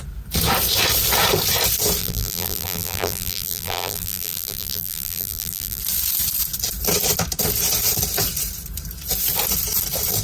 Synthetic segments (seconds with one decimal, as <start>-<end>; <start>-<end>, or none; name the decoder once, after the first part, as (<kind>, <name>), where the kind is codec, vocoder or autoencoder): 2.0-5.8 (vocoder, BigVGAN v2)

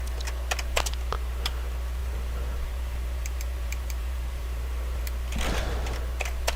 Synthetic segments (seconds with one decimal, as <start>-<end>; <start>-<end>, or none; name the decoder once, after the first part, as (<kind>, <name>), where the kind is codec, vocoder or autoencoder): 2.0-5.0 (vocoder, BigVGAN v2)

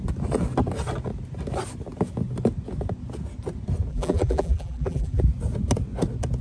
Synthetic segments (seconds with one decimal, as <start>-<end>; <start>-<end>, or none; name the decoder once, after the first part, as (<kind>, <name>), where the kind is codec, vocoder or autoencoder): 3.9-5.2 (vocoder, BigVGAN v2)

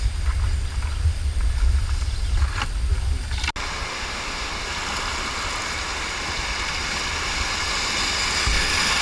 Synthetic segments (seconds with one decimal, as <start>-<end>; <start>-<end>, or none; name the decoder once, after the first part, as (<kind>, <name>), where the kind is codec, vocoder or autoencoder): 3.9-4.5 (autoencoder, DAC-VAE)

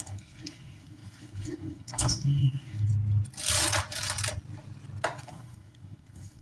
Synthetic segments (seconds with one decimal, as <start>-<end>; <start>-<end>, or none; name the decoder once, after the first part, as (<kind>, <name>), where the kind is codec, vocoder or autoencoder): 0.0-2.9 (codec, SNAC); 5.2-6.4

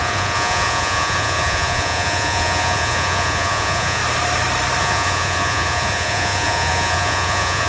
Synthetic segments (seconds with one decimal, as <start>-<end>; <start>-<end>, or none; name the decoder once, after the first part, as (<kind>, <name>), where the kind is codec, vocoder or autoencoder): 0.0-4.0 (vocoder, Vocos); 4.8-7.7

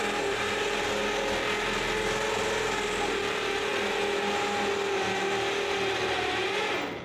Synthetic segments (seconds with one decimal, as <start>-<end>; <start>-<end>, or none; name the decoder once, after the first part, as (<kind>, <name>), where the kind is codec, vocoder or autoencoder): none

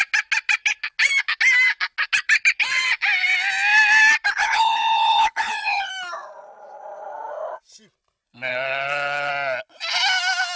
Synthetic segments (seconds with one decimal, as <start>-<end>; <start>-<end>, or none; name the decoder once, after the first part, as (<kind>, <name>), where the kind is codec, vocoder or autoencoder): 4.4-5.9 (codec, HILCodec); 8.5-9.3